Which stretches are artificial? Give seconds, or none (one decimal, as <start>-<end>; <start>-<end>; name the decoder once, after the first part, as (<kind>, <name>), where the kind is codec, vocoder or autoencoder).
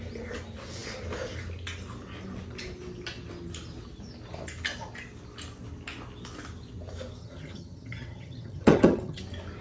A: 7.2-9.2 (vocoder, HiFi-GAN)